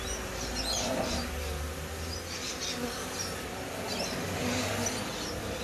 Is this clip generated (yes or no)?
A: no